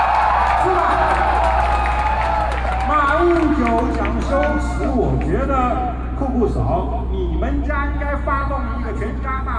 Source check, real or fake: real